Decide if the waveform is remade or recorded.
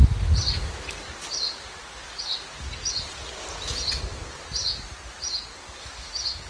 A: recorded